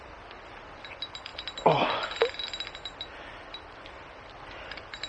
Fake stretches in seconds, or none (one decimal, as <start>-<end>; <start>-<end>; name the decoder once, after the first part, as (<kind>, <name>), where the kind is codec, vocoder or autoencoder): none